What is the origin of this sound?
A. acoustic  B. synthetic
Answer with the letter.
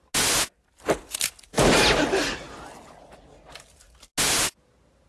A